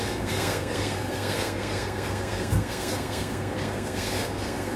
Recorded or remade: remade